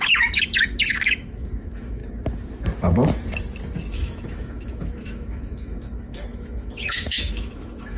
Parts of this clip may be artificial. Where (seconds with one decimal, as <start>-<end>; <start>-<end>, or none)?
0.0-2.0; 3.9-8.0